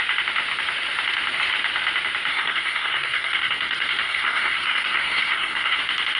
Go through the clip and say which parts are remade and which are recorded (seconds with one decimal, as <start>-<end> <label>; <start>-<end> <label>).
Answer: 0.0-2.3 recorded; 2.3-5.8 remade; 5.8-6.2 recorded